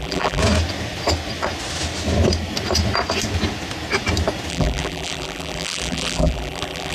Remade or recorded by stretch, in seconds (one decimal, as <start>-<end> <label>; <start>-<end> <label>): 0.0-0.4 remade; 0.4-4.5 recorded; 4.5-6.9 remade